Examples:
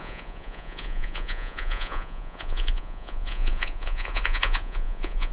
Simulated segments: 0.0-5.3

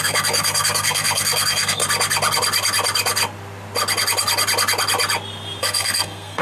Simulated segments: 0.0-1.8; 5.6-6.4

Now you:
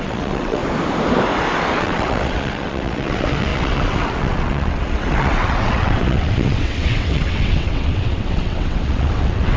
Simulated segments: 0.0-0.6; 1.8-9.6

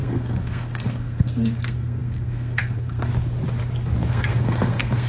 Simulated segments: 0.0-3.1; 4.1-5.1

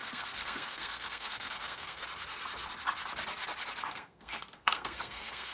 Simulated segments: 0.0-2.0; 3.8-5.5

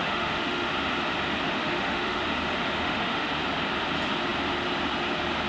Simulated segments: 0.0-0.7; 1.6-2.2; 2.8-3.3

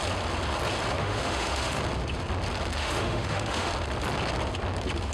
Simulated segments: 1.0-1.8; 2.8-3.7